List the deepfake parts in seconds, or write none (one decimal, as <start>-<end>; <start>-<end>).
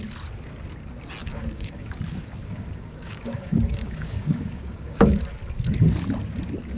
1.2-2.0; 2.4-5.2